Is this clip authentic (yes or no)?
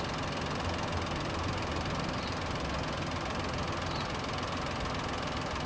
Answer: yes